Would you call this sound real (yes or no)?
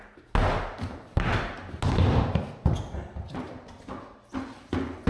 yes